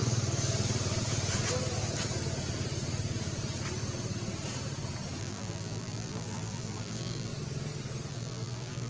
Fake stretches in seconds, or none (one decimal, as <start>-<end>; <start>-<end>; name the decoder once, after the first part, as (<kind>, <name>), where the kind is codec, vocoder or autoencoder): 5.2-7.3 (vocoder, BigVGAN v2); 8.1-8.9